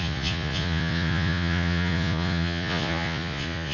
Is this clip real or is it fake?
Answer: fake